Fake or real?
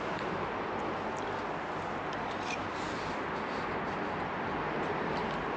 real